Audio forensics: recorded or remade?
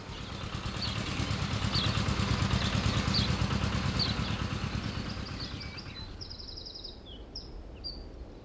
recorded